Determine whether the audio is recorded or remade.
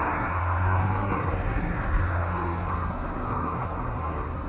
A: remade